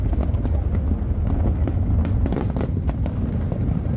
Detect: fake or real real